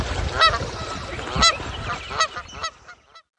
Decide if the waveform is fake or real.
real